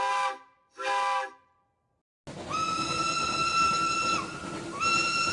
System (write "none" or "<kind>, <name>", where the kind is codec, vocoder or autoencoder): none